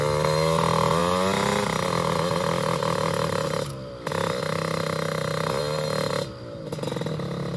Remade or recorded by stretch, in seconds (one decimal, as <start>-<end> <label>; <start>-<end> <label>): 0.0-7.6 recorded